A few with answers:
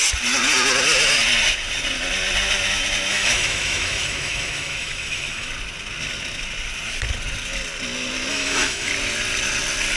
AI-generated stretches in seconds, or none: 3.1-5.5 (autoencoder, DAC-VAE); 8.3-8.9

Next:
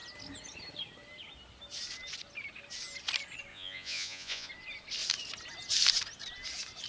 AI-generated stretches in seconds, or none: 3.5-4.5 (vocoder, Vocos)

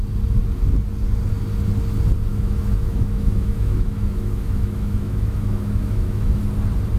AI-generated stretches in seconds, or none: 2.3-6.4 (autoencoder, DAC-VAE)